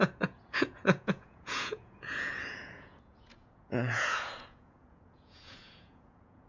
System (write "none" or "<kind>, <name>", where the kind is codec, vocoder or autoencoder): vocoder, Vocos